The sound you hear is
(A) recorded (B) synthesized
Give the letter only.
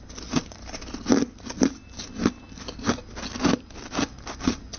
A